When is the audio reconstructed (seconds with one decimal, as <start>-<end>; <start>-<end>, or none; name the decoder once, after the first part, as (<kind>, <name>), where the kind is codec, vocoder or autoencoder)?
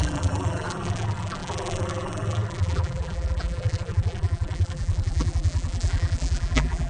0.0-6.9 (vocoder, BigVGAN v2)